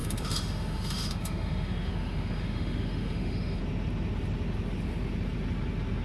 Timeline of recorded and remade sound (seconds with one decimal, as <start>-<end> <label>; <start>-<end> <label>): 0.0-3.6 remade; 3.6-6.0 recorded